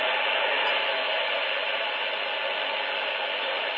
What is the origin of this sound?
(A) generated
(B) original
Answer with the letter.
B